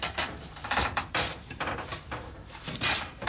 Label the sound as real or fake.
fake